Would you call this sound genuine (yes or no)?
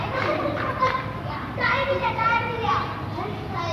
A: yes